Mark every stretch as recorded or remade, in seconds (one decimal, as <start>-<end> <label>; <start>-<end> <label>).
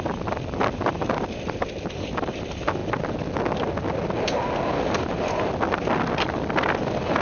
0.0-2.8 remade; 2.8-6.1 recorded; 6.1-7.2 remade